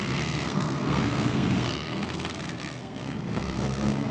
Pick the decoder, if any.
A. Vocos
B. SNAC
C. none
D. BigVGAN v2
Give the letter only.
B